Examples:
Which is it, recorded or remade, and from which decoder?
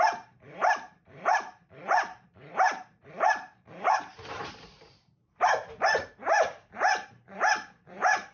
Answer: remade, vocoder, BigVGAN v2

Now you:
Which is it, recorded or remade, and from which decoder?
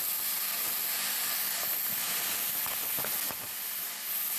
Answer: recorded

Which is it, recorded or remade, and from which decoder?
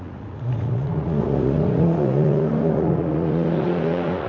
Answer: remade, vocoder, Vocos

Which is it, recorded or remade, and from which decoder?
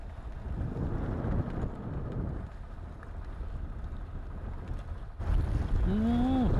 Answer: recorded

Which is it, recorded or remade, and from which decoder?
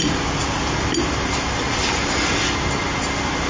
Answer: recorded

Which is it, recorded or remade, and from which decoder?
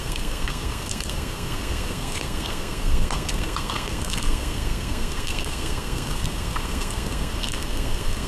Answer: remade, codec, SNAC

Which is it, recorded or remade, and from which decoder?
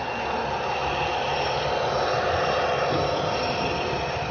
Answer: recorded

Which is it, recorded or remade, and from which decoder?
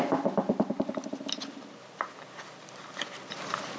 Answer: recorded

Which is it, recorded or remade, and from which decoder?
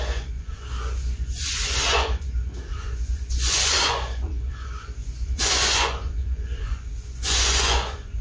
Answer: remade, vocoder, Vocos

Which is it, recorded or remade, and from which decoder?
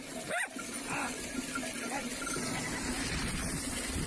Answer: recorded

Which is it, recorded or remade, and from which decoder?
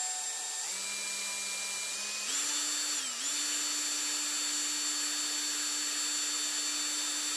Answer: recorded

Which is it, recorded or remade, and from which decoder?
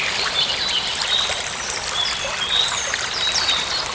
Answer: remade, vocoder, BigVGAN v2